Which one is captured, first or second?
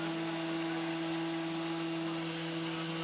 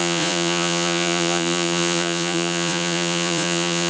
first